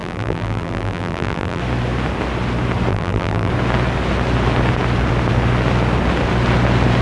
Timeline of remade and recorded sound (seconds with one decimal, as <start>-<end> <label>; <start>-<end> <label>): 0.0-1.6 remade; 1.6-2.9 recorded; 2.9-3.5 remade; 3.5-7.0 recorded